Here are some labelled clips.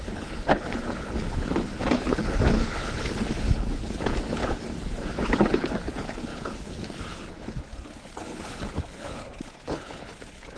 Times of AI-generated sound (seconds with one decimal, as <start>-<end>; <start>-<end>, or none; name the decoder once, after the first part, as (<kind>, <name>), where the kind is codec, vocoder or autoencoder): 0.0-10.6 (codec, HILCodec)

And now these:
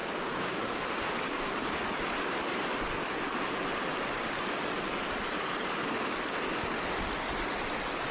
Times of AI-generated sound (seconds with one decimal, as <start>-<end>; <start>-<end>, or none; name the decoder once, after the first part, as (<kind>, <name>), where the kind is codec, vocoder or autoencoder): 0.0-0.8 (codec, DAC)

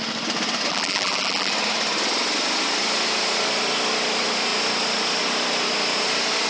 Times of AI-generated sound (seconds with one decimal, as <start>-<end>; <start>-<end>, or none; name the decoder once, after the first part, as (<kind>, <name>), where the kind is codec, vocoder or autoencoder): 0.7-1.5 (vocoder, BigVGAN v2)